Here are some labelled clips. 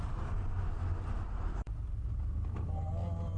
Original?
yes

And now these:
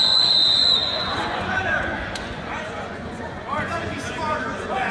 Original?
no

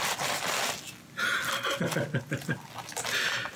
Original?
yes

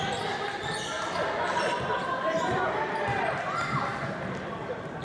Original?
yes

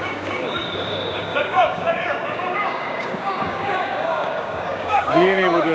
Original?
no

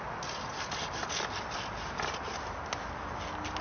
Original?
yes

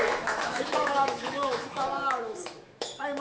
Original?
no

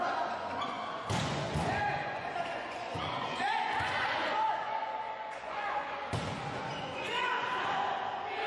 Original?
no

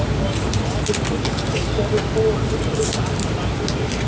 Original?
yes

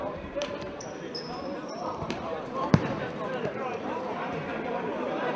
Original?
no